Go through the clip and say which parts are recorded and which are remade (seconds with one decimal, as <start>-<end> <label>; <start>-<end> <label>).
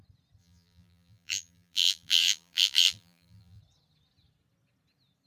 0.0-0.4 recorded; 0.4-3.6 remade; 3.6-5.3 recorded